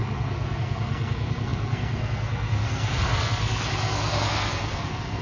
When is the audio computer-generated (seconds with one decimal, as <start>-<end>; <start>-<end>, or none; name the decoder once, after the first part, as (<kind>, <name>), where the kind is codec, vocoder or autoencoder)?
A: 0.0-5.2 (codec, SNAC)